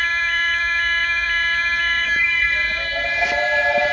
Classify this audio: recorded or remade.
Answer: remade